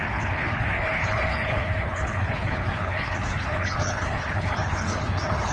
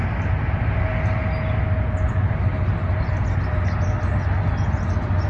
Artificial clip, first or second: first